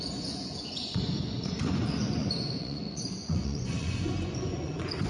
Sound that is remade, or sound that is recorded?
remade